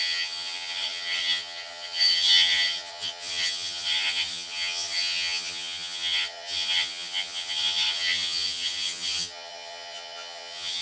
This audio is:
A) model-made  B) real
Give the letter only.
A